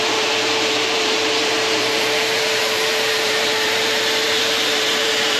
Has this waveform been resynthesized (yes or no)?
yes